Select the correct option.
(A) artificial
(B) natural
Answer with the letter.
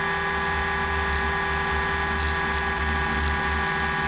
B